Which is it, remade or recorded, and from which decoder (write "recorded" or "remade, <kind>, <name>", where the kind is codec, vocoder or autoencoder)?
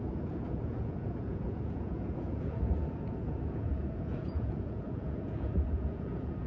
remade, vocoder, Vocos